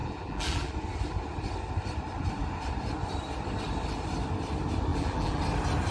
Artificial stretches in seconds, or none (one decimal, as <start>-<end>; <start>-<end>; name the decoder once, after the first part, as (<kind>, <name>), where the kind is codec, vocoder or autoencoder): 0.0-0.7 (vocoder, BigVGAN v2); 4.9-5.4

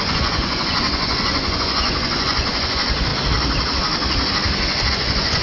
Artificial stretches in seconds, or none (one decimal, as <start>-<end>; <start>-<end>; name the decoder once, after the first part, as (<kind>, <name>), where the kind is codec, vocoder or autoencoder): 0.0-3.1 (vocoder, Vocos); 4.9-5.4

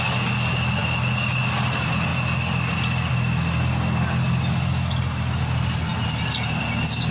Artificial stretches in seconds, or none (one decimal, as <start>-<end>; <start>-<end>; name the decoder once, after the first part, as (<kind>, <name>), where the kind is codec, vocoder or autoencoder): none

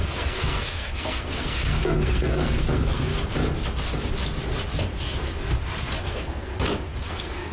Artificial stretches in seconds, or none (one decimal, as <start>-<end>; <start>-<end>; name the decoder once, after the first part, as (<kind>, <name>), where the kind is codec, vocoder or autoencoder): 0.0-3.1 (codec, SNAC); 6.0-6.5; 7.1-7.5